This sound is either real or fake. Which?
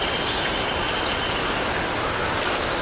real